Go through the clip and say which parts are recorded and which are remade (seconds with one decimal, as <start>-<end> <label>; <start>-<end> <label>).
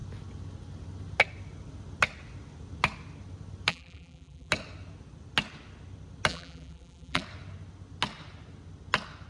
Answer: 0.0-3.7 recorded; 3.7-4.5 remade; 4.5-6.3 recorded; 6.3-7.2 remade; 7.2-9.3 recorded